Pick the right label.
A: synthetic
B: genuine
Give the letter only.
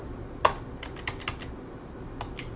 B